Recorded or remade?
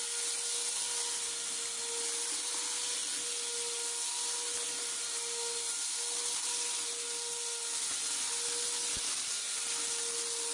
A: recorded